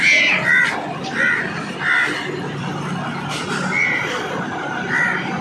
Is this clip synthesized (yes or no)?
no